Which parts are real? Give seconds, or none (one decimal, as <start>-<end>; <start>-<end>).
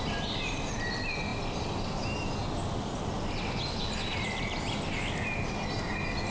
0.0-6.3